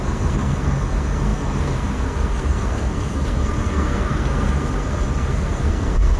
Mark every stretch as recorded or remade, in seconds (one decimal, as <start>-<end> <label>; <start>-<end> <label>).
0.0-6.2 remade